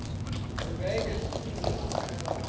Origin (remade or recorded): recorded